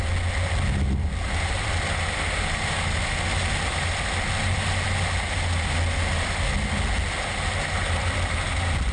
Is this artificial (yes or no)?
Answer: no